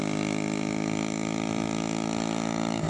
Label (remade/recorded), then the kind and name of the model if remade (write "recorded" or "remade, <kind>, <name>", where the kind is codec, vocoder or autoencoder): recorded